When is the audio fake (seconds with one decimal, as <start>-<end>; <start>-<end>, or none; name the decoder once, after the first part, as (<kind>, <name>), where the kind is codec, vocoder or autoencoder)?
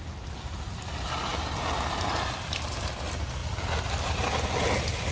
none